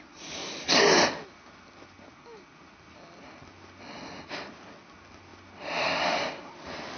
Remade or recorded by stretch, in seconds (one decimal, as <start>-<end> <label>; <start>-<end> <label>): 0.0-7.0 recorded